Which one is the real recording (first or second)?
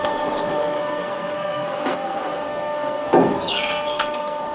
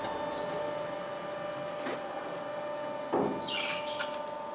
second